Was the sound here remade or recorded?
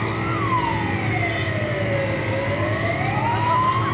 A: recorded